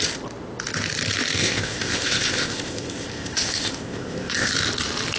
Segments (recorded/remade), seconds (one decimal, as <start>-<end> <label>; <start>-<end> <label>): 0.0-1.4 recorded; 1.4-4.5 remade; 4.5-5.2 recorded